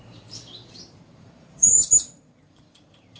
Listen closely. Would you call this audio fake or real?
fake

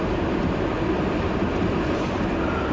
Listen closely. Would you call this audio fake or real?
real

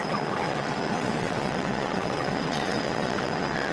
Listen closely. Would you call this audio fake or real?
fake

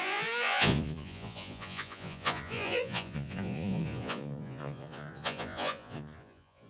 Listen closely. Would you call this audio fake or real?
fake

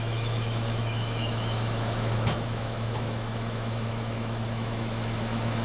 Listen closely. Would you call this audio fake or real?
fake